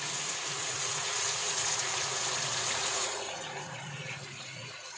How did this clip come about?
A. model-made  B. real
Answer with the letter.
A